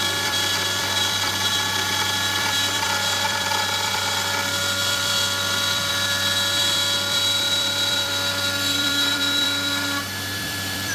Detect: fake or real fake